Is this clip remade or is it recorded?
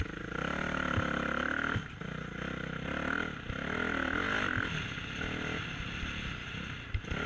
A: recorded